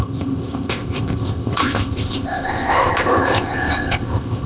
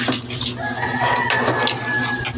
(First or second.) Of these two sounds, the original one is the second